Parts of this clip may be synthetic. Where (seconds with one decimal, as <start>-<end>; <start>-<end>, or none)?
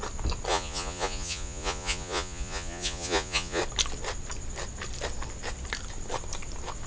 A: 0.5-3.6